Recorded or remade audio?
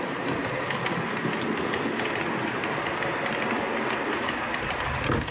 recorded